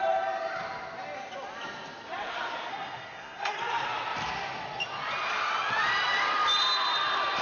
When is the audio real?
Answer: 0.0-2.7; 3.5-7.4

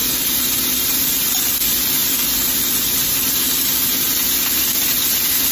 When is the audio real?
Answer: 0.0-5.5

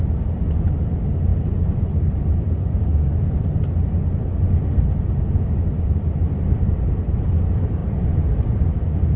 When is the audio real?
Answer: 1.3-1.9; 2.9-5.0

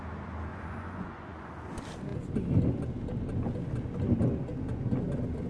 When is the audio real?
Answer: 0.0-0.5; 1.5-5.5